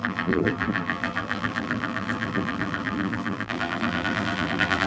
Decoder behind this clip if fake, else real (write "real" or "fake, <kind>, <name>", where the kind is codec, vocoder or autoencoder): fake, vocoder, BigVGAN v2